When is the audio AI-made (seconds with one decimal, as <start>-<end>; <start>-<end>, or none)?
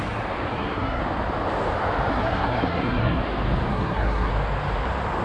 0.5-1.0; 2.1-3.2; 3.7-4.3